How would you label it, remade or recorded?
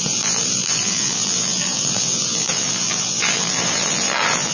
remade